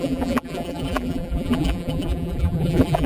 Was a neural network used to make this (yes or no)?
yes